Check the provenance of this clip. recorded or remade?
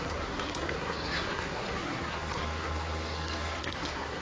remade